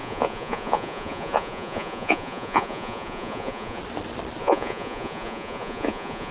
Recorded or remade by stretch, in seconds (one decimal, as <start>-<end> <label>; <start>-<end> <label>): 0.0-3.8 remade; 3.8-4.4 recorded; 4.4-6.3 remade